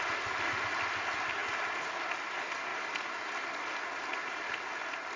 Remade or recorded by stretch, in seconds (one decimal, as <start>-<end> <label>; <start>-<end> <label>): 0.0-5.2 recorded

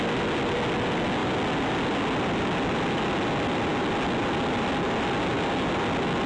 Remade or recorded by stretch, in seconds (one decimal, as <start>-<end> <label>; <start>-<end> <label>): 0.0-6.3 recorded

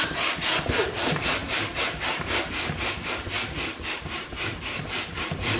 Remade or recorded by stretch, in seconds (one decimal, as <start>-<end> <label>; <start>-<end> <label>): 0.0-5.6 remade

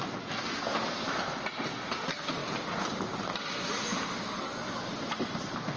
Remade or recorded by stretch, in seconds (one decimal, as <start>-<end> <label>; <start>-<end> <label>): 0.0-5.8 recorded

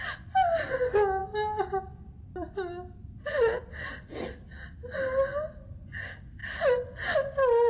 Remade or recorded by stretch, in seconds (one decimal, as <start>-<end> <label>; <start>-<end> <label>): 0.0-7.7 recorded

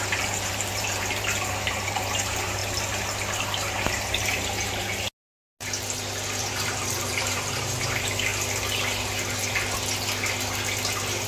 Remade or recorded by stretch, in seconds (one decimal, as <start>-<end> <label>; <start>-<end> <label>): 0.0-2.6 remade; 2.6-6.4 recorded; 6.4-8.3 remade; 8.3-11.3 recorded

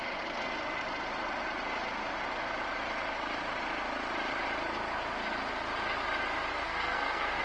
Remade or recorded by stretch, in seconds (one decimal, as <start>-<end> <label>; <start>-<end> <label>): 0.0-6.5 recorded; 6.5-7.4 remade